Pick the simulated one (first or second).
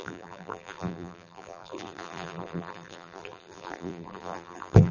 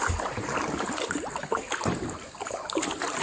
first